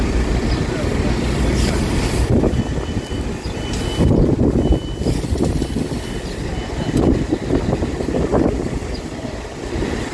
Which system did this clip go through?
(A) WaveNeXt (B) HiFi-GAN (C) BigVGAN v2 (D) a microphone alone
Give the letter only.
D